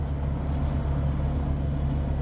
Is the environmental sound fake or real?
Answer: real